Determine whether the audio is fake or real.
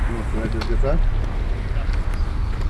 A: real